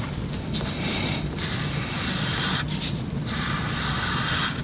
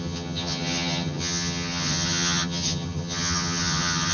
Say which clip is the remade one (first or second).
second